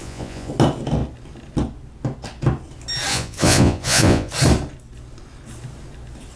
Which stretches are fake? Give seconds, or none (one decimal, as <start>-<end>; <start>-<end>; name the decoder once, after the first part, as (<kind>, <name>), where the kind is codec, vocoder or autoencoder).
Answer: 0.0-0.5 (vocoder, Vocos); 3.1-4.3